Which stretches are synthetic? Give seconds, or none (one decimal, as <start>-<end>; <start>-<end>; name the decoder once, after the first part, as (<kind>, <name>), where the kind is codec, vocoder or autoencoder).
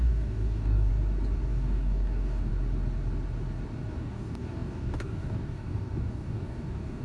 0.0-0.9 (codec, DAC); 1.5-2.5; 3.9-7.0